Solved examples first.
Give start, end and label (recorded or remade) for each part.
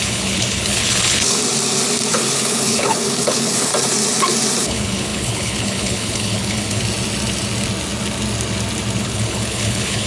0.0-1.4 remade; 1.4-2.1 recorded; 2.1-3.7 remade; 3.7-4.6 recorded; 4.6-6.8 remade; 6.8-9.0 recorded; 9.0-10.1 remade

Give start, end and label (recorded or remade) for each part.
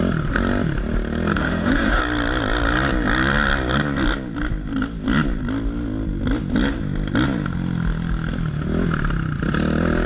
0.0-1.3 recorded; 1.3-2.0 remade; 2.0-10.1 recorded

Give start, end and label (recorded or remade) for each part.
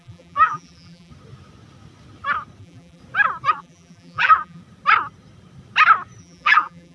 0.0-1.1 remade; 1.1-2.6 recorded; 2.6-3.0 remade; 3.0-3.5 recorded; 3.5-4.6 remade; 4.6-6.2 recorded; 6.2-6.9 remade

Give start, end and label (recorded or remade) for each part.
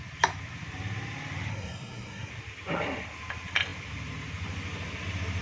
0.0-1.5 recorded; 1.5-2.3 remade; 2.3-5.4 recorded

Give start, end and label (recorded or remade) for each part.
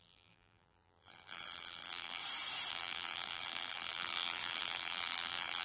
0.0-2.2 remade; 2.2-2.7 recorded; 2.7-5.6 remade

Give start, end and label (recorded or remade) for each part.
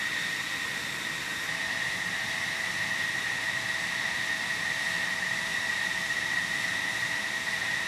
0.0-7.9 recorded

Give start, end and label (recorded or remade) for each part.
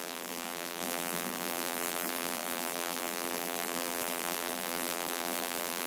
0.0-5.9 remade